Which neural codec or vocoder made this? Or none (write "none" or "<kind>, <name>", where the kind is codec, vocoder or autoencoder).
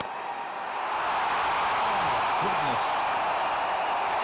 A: none